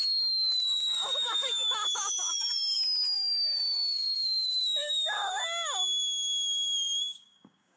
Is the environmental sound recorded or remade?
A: remade